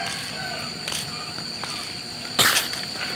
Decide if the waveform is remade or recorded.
recorded